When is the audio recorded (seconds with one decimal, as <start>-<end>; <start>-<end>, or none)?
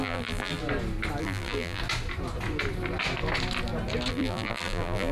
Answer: 0.6-1.2; 1.8-4.1